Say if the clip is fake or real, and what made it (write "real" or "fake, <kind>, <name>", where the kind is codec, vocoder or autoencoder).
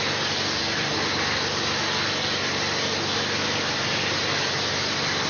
real